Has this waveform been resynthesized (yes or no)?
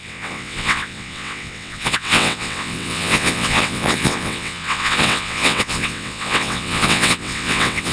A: yes